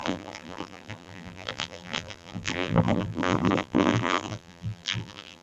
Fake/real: fake